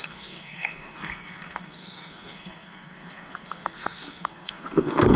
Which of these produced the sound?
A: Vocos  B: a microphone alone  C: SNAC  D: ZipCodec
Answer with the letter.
C